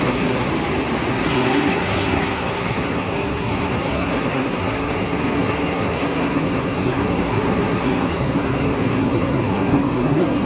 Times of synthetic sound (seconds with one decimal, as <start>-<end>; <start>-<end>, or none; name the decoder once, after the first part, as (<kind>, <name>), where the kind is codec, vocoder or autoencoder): 0.0-0.5 (codec, SNAC); 1.1-10.5